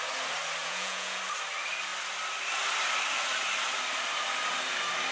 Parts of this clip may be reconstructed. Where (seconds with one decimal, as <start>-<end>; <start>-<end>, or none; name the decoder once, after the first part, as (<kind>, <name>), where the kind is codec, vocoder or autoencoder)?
0.6-1.2 (vocoder, Vocos)